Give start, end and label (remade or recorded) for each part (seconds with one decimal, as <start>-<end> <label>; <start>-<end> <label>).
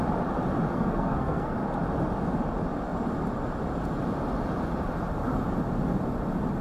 0.0-0.7 recorded; 0.7-1.6 remade; 1.6-6.6 recorded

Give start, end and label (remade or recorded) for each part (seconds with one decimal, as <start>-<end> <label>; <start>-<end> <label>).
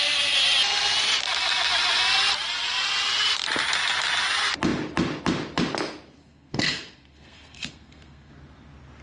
0.0-6.2 recorded; 6.2-8.3 remade; 8.3-9.0 recorded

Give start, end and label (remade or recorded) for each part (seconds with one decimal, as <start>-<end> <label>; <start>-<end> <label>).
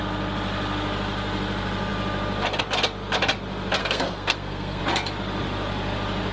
0.0-3.8 recorded; 3.8-4.8 remade; 4.8-6.3 recorded